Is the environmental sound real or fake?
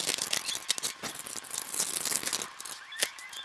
real